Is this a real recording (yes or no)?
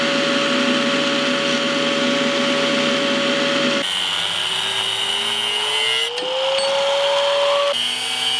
yes